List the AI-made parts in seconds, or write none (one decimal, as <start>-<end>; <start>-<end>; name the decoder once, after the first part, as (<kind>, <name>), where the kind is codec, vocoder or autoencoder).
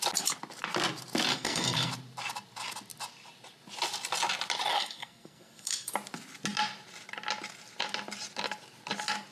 1.3-1.9 (codec, SNAC); 4.7-5.9